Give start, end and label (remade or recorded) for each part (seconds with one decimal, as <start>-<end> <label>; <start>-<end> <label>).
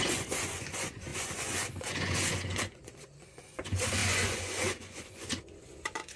0.0-6.2 remade